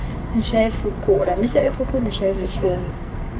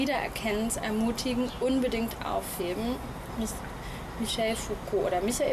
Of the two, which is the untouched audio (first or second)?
second